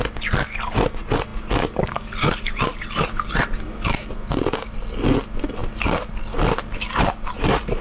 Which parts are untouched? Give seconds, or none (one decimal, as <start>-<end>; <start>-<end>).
0.0-7.8